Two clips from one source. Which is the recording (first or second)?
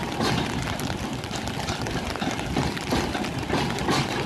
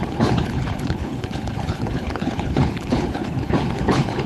first